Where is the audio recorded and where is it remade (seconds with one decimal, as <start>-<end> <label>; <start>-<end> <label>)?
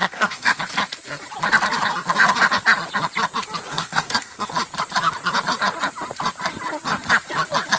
0.0-0.6 remade; 0.6-3.7 recorded; 3.7-4.5 remade; 4.5-7.8 recorded